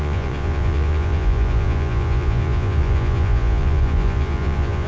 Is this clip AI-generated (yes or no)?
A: yes